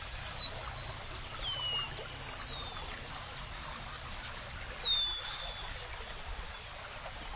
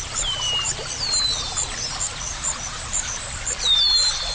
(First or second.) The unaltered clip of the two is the first